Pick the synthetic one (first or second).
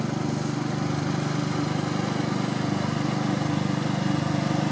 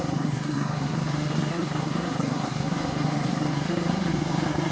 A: second